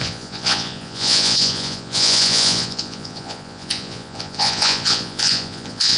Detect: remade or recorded remade